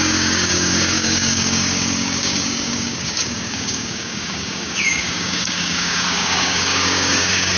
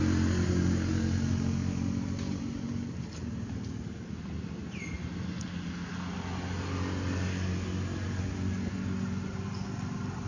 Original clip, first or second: second